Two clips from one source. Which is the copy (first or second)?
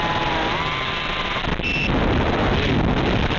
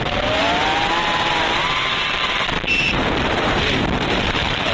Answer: second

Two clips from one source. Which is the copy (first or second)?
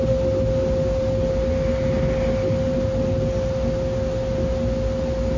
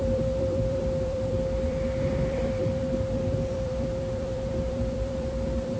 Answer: second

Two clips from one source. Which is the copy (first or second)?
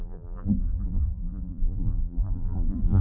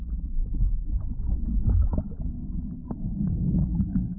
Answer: first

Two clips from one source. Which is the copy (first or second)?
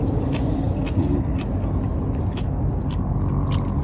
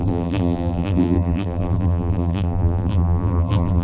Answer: second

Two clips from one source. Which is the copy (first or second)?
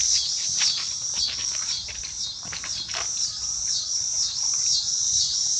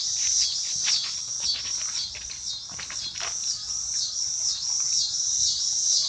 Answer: first